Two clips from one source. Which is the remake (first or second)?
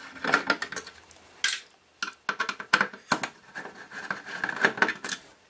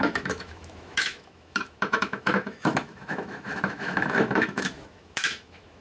second